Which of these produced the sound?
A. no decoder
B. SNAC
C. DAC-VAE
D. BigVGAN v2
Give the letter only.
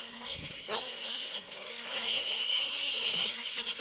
B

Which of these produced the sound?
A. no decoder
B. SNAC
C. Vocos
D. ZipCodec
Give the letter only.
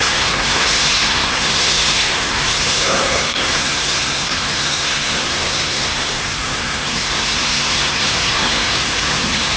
B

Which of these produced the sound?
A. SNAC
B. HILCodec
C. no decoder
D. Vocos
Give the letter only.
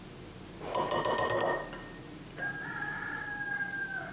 C